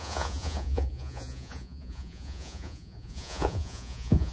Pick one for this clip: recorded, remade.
remade